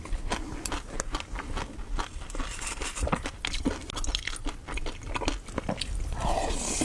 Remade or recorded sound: recorded